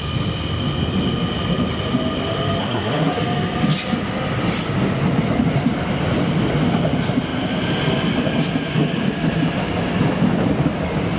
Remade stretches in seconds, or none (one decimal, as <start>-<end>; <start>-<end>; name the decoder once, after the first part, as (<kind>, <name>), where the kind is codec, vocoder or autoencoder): 2.6-3.2 (codec, SNAC)